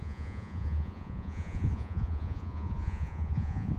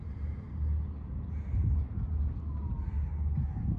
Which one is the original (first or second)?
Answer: second